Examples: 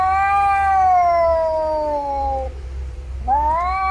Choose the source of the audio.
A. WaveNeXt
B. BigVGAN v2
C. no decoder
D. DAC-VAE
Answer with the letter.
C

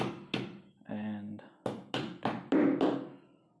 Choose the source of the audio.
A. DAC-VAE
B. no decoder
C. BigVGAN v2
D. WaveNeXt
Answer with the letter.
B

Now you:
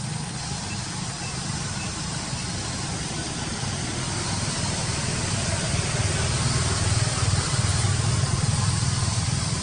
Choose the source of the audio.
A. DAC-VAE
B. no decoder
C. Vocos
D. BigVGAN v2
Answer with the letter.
D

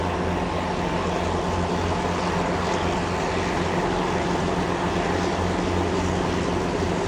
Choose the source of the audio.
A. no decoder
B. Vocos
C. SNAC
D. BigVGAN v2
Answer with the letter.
A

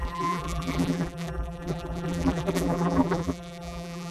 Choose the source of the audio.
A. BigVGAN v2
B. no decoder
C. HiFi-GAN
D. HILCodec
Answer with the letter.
A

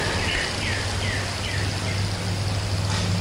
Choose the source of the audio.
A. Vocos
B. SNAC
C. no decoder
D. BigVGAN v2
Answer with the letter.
C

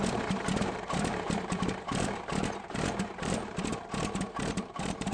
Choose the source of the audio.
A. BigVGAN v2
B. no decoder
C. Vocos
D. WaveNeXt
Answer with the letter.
A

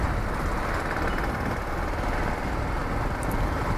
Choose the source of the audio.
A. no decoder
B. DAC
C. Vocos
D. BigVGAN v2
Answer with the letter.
A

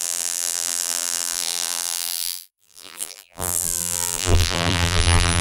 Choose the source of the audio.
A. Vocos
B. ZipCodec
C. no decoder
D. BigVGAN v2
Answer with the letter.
D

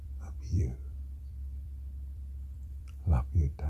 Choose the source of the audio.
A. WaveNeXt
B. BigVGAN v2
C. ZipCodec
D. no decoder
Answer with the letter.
B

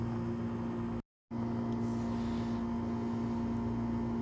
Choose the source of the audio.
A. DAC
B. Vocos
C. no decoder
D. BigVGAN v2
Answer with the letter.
C